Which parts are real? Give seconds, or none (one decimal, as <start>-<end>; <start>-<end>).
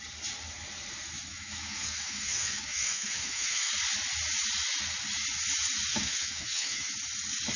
0.0-1.3; 3.7-5.9; 6.9-7.6